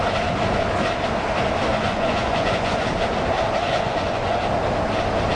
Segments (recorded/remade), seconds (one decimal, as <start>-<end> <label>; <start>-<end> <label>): 0.0-1.7 recorded; 1.7-2.9 remade; 2.9-3.6 recorded; 3.6-4.4 remade; 4.4-5.4 recorded